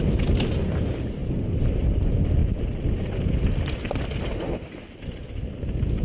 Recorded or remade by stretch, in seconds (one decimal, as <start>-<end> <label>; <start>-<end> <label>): 0.0-6.0 recorded